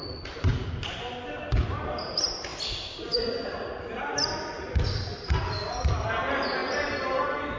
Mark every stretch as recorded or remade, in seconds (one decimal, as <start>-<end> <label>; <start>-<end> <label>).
0.0-7.6 recorded